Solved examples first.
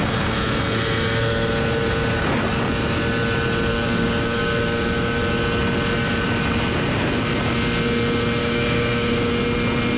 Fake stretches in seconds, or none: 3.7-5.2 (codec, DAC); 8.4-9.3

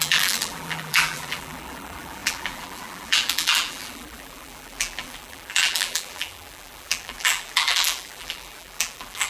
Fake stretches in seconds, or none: 0.0-9.3 (vocoder, BigVGAN v2)

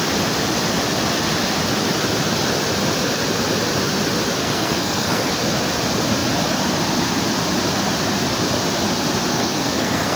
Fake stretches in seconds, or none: 4.4-5.3 (codec, SNAC); 9.3-10.2

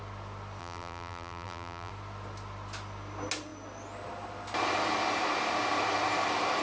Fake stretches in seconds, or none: 0.6-1.9 (vocoder, BigVGAN v2)

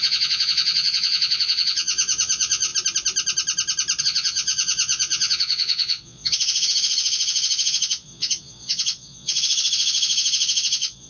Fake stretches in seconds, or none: 0.0-2.7 (vocoder, Vocos); 4.0-11.1

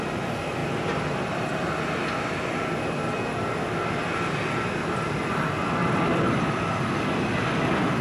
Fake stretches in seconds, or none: 5.8-7.0 (vocoder, BigVGAN v2)

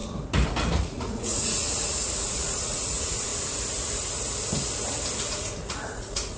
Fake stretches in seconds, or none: 0.8-3.3 (vocoder, Vocos); 5.3-6.4

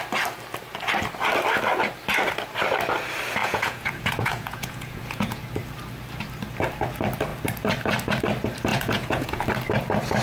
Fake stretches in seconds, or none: 3.4-5.4 (vocoder, Vocos); 8.7-9.4